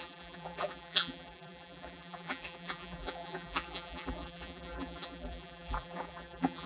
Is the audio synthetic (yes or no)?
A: yes